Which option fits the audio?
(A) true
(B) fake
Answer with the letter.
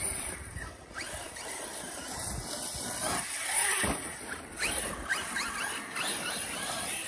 A